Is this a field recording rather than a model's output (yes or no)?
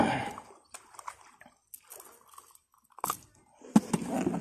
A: yes